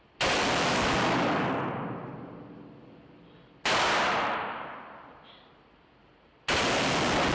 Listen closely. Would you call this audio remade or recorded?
recorded